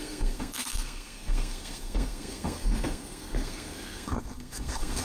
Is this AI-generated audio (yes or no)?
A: yes